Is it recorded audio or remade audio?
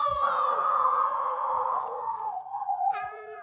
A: remade